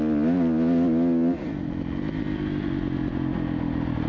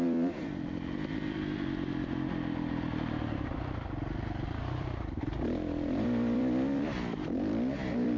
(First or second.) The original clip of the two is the first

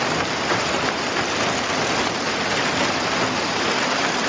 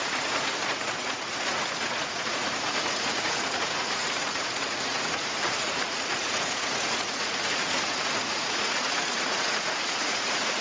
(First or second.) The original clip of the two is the first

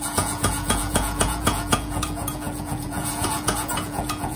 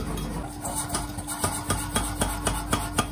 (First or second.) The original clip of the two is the second